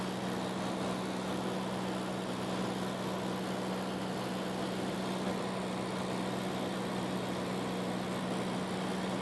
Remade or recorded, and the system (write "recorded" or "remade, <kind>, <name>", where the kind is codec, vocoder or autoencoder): recorded